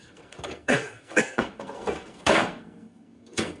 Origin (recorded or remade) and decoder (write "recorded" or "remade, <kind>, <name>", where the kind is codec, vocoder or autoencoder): remade, codec, SNAC